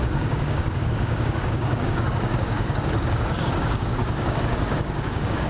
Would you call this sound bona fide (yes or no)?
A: no